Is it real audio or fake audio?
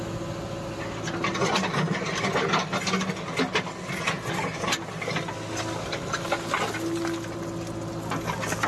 real